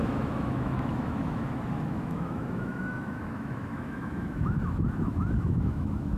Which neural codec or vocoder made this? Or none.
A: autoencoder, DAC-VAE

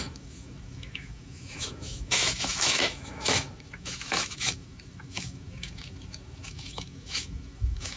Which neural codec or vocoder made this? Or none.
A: autoencoder, DAC-VAE